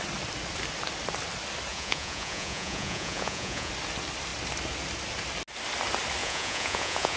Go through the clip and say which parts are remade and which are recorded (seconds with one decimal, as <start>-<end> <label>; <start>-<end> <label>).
0.0-1.7 recorded; 1.7-3.7 remade; 3.7-6.2 recorded; 6.2-7.2 remade

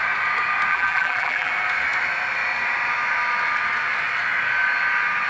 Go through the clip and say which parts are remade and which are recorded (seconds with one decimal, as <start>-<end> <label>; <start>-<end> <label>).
0.0-0.7 recorded; 0.7-1.5 remade; 1.5-5.3 recorded

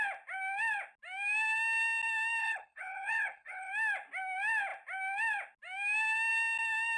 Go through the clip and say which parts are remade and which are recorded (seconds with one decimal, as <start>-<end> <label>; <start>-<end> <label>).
0.0-2.4 recorded; 2.4-3.7 remade; 3.7-7.0 recorded

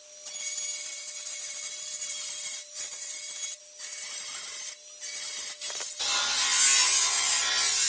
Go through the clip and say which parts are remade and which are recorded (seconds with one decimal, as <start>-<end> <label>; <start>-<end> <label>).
0.0-0.8 recorded; 0.8-3.6 remade; 3.6-7.9 recorded